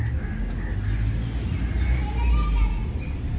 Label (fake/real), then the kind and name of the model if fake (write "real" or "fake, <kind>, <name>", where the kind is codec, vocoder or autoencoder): real